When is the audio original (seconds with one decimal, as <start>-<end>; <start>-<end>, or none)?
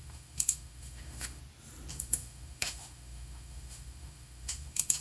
1.4-1.9